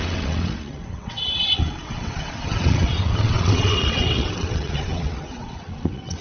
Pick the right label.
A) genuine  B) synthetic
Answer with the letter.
B